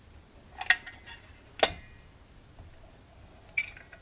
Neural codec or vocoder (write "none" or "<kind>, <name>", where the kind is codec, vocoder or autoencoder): none